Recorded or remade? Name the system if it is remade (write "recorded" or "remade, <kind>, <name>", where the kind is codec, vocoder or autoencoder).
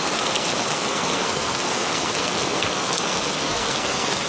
remade, codec, SNAC